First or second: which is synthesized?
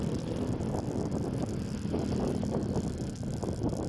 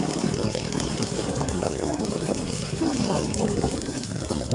second